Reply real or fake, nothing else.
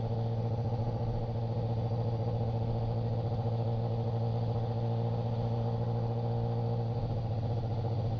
real